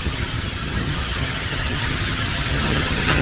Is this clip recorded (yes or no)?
no